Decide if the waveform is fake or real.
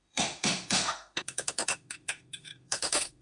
fake